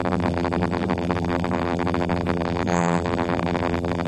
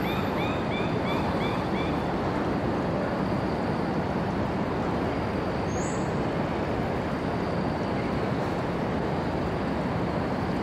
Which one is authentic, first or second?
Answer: second